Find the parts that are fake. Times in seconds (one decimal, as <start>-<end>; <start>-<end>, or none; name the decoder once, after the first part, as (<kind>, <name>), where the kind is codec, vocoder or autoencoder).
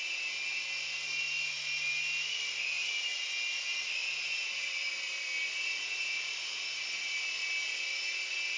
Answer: none